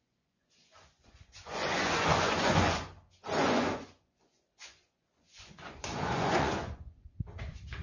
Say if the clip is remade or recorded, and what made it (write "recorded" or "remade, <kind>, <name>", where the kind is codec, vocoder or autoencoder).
remade, vocoder, Vocos